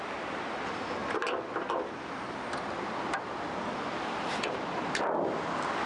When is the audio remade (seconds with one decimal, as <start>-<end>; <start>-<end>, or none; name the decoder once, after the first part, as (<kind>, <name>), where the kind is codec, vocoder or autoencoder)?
none

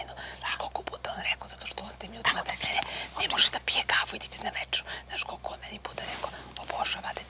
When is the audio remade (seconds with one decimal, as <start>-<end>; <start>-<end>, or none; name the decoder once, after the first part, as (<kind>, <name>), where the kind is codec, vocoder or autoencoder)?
none

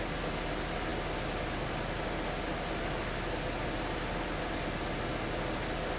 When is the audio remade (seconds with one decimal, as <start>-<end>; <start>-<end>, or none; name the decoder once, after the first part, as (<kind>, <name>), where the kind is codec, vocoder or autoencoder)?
none